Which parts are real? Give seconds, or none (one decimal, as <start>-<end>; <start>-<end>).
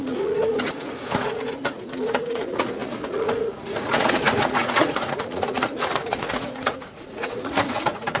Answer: none